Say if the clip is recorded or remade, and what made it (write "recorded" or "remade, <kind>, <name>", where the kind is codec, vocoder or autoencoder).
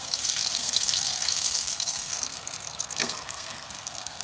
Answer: remade, codec, SNAC